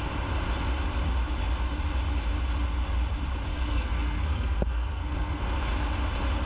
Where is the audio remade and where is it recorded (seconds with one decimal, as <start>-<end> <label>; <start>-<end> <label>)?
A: 0.0-3.5 recorded; 3.5-5.6 remade; 5.6-6.5 recorded